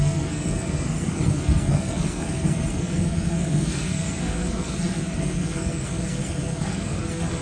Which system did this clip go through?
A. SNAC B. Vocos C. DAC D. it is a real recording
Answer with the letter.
A